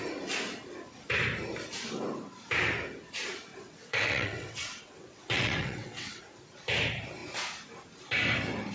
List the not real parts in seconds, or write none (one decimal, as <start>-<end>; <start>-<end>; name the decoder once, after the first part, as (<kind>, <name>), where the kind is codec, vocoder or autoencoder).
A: 3.5-6.2 (vocoder, WaveNeXt)